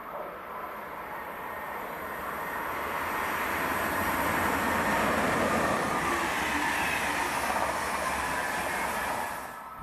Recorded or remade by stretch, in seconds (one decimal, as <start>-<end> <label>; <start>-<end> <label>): 0.0-9.8 recorded